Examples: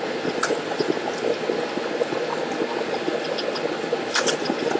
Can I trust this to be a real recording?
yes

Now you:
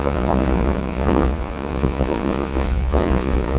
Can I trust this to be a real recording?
no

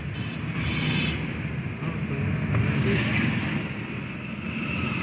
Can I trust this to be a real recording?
yes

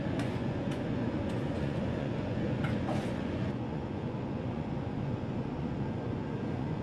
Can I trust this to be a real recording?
no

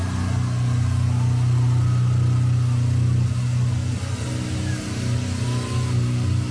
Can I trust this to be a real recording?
yes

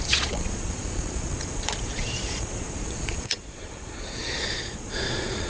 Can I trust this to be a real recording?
no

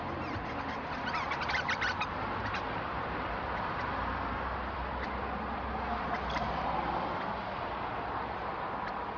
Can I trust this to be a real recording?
yes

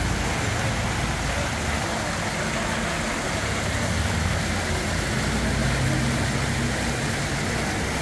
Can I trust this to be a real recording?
yes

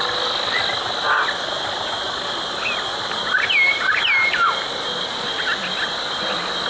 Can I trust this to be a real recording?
yes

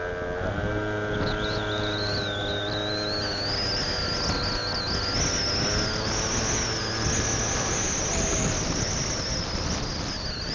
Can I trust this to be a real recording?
yes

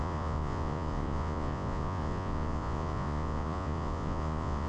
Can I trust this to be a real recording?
no